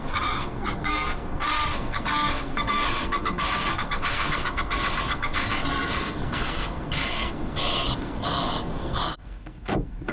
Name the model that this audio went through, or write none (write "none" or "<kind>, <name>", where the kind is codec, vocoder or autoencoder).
codec, SNAC